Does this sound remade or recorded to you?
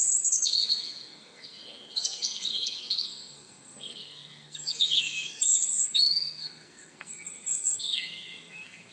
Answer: remade